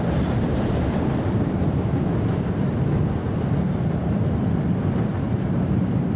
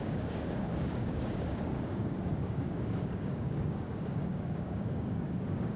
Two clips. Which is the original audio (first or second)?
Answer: first